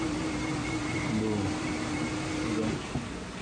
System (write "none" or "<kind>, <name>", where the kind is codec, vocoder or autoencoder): none